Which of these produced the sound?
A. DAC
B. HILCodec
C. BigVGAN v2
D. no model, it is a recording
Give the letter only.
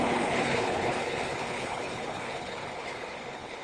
B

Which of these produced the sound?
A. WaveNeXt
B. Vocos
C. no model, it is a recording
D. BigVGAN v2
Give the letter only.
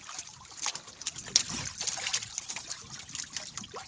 C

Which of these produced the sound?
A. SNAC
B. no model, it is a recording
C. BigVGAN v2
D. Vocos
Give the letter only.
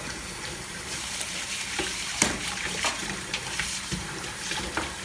C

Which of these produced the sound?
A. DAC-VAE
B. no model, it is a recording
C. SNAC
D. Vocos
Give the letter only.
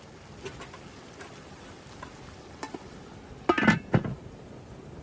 B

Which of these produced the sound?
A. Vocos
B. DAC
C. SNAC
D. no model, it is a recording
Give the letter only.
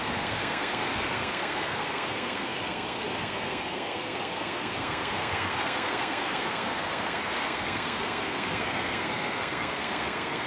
C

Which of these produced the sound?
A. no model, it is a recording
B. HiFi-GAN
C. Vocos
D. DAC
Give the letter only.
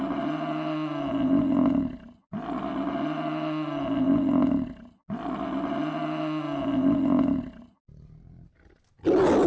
A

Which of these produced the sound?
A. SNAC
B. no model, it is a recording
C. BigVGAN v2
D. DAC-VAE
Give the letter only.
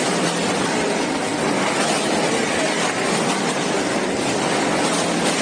B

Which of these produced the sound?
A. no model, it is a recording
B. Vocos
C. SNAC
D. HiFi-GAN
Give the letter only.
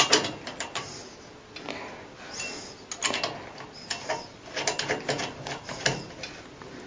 A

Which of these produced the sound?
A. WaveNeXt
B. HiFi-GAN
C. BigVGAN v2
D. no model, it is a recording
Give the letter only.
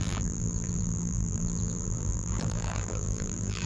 C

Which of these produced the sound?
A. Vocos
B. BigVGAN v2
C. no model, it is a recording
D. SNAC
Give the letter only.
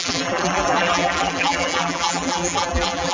B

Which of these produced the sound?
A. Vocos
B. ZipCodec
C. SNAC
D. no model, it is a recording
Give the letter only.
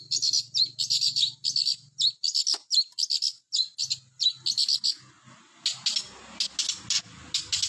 D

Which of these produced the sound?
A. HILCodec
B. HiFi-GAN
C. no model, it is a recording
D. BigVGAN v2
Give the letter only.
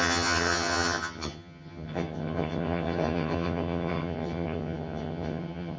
B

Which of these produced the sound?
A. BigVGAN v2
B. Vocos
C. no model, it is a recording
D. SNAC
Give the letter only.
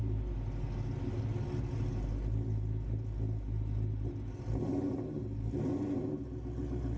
C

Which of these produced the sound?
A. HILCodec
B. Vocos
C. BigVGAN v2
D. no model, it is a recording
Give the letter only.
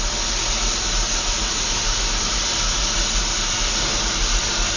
D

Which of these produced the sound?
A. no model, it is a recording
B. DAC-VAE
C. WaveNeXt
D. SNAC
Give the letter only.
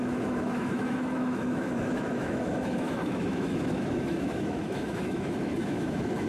B